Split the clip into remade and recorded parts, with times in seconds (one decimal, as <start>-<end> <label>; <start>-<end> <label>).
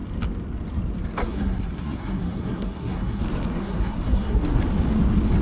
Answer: 0.0-1.2 recorded; 1.2-3.2 remade; 3.2-3.6 recorded; 3.6-4.6 remade; 4.6-5.4 recorded